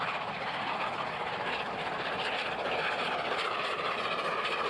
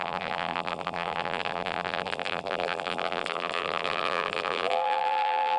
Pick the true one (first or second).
first